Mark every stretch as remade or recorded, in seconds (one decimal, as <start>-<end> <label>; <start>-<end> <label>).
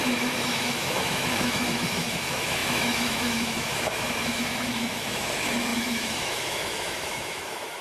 0.0-7.8 remade